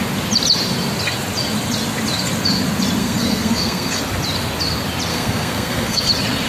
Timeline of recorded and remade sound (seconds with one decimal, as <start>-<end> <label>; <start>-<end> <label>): 0.0-3.0 recorded; 3.0-4.0 remade; 4.0-5.1 recorded; 5.1-6.1 remade; 6.1-6.5 recorded